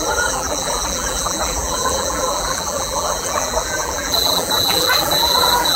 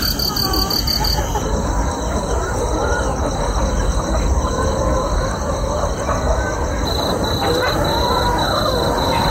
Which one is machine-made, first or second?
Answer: first